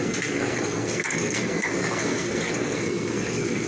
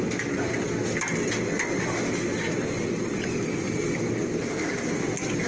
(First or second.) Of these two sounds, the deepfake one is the first